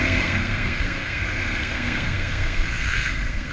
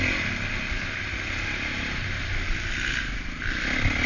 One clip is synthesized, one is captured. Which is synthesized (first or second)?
first